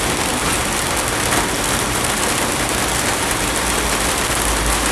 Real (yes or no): yes